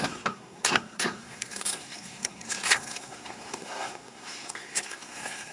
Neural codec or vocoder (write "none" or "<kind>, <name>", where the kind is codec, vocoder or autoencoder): codec, SNAC